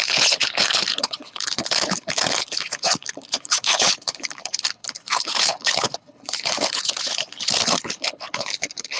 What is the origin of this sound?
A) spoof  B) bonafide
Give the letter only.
A